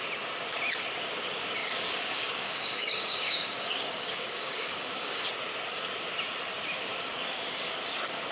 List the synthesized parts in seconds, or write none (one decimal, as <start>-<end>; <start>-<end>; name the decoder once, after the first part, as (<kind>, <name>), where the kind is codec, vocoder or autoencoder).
1.6-5.3 (codec, DAC); 6.9-7.7